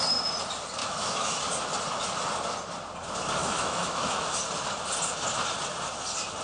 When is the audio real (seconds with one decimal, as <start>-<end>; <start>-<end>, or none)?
0.0-0.8; 1.4-3.4; 4.4-6.4

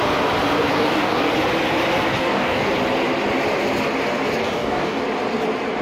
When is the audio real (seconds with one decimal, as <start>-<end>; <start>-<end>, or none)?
0.0-0.7; 1.3-2.1; 2.7-4.4; 5.0-5.8